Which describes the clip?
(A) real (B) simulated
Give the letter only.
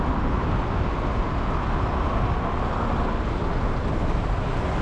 A